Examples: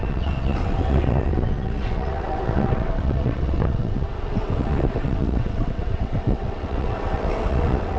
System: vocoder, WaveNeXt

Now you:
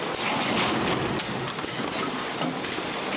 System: none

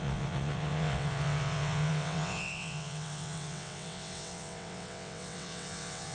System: vocoder, WaveNeXt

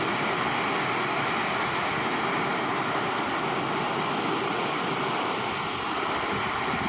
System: none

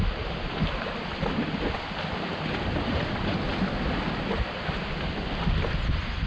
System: none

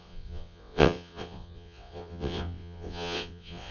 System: vocoder, WaveNeXt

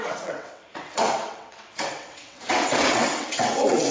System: vocoder, WaveNeXt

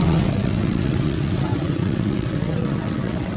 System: vocoder, WaveNeXt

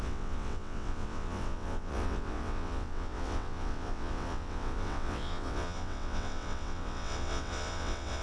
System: vocoder, WaveNeXt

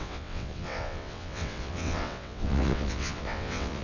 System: vocoder, WaveNeXt